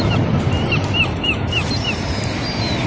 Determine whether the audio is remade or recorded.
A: recorded